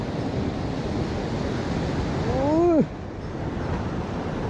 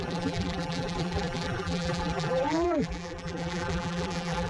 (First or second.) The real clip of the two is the first